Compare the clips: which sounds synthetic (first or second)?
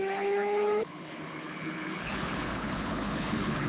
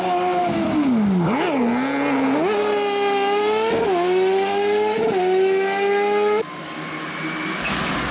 first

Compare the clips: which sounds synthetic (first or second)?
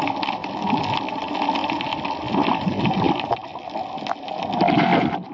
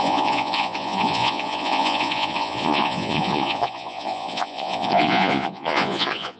second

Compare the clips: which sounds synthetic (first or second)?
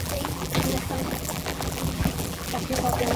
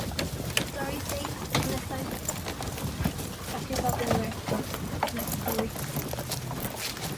first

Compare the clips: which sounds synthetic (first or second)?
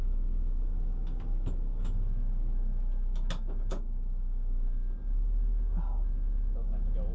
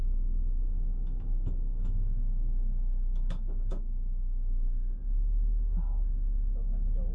second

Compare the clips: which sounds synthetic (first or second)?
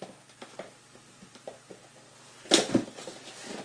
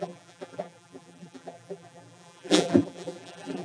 second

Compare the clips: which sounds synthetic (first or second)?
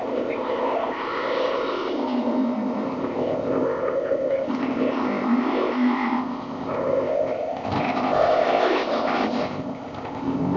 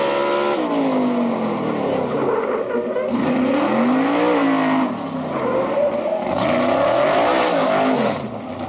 first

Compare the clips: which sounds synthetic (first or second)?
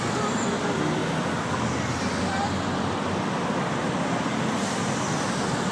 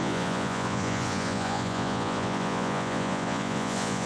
second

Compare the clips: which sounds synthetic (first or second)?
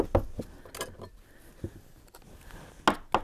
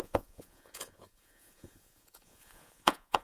second